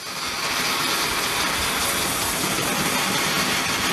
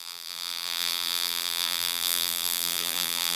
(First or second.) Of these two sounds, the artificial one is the second